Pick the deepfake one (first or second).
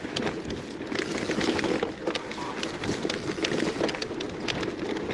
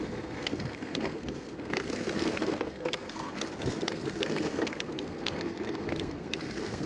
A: second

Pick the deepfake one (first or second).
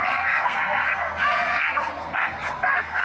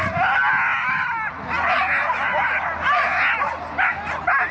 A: first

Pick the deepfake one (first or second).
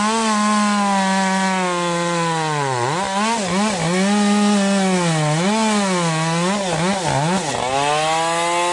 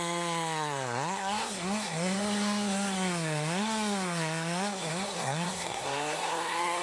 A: second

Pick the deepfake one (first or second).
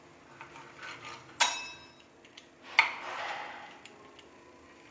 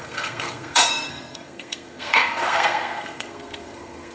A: second